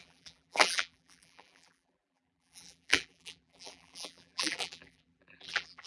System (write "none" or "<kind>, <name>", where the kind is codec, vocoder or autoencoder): vocoder, BigVGAN v2